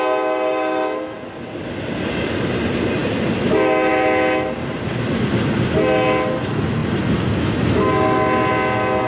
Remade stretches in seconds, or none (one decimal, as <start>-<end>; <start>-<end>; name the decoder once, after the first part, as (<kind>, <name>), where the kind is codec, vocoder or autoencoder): none